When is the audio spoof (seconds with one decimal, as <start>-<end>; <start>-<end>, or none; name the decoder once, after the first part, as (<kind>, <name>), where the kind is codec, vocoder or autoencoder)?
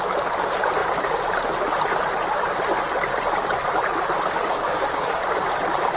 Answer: 4.4-5.2 (codec, DAC)